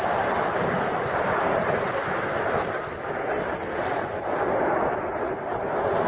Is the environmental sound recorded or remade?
recorded